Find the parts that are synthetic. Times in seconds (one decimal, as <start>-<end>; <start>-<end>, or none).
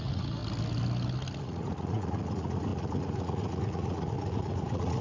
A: 0.0-0.4; 1.4-5.0